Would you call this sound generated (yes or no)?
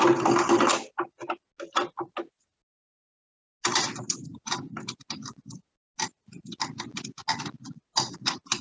no